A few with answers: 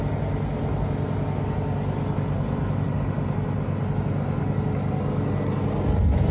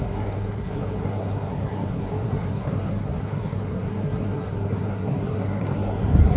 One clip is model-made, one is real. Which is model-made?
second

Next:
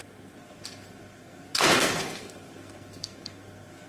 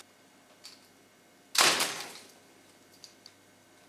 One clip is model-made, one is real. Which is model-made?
first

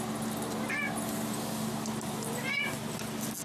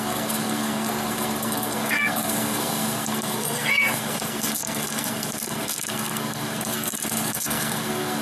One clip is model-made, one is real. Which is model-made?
second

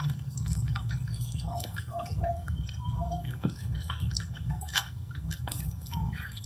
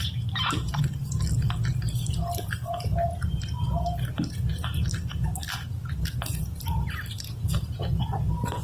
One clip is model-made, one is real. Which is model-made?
first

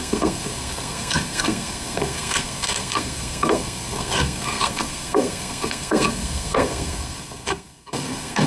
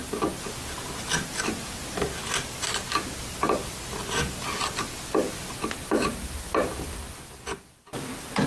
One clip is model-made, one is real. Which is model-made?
first